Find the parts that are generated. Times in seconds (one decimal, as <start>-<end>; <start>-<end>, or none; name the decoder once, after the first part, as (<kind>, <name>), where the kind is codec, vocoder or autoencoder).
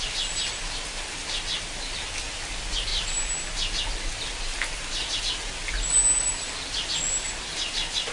none